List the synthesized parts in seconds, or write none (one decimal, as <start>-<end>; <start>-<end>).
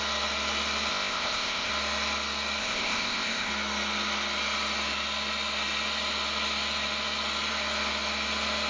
0.9-1.7; 2.6-3.5